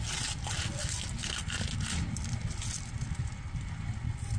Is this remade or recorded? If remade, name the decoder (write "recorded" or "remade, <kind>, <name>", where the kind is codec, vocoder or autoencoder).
recorded